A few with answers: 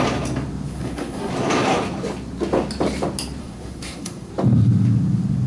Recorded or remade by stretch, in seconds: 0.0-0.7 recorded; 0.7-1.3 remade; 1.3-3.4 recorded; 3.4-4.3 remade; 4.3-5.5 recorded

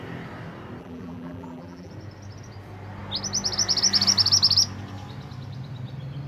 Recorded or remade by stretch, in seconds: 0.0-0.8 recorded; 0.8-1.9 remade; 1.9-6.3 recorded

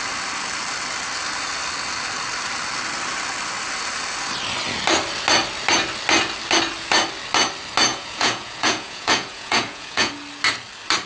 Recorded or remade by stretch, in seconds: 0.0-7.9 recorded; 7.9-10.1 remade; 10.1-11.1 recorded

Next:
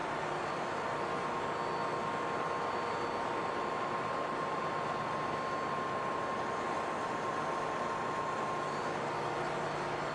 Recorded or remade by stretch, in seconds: 0.0-10.1 recorded

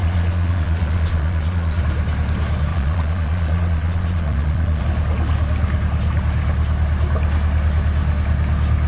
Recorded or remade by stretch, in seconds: 0.0-1.8 remade; 1.8-2.7 recorded; 2.7-4.8 remade; 4.8-8.9 recorded

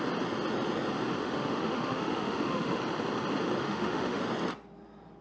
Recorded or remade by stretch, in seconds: 0.0-1.2 recorded; 1.2-2.8 remade; 2.8-3.6 recorded; 3.6-4.2 remade; 4.2-5.2 recorded

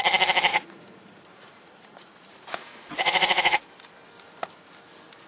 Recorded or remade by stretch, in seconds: 0.0-0.5 recorded; 0.5-3.7 remade; 3.7-5.3 recorded

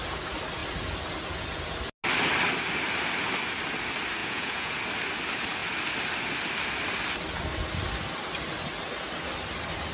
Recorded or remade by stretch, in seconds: 0.0-4.2 recorded; 4.2-4.7 remade; 4.7-9.9 recorded